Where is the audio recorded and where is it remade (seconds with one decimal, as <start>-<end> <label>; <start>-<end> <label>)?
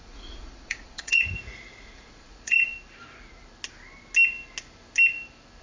0.0-2.7 remade; 2.7-5.6 recorded